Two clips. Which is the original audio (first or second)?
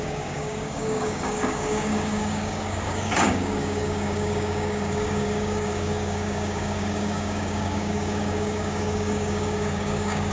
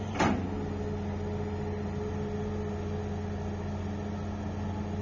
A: second